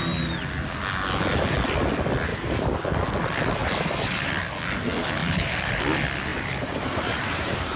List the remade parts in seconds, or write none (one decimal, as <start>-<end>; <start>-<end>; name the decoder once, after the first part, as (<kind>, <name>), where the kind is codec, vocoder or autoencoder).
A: 2.3-2.8 (vocoder, BigVGAN v2); 3.6-4.3; 5.2-5.8; 6.3-7.8